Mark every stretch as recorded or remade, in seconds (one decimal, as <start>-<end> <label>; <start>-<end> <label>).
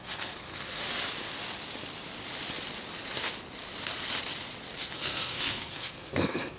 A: 0.0-0.8 remade; 0.8-4.8 recorded; 4.8-6.6 remade